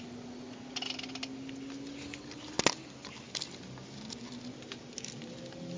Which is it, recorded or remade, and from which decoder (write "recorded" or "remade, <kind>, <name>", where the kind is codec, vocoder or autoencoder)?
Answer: recorded